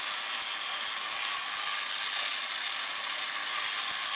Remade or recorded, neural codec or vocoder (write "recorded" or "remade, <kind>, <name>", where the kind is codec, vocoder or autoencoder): recorded